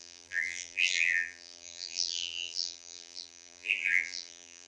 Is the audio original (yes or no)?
no